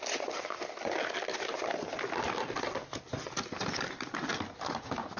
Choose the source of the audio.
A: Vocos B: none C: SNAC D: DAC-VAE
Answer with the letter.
B